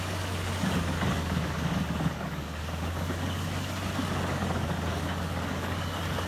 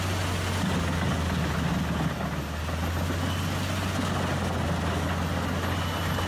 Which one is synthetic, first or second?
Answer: first